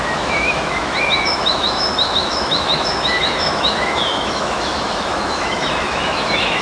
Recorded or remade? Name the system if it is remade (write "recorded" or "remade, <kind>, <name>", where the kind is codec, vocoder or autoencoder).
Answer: remade, autoencoder, DAC-VAE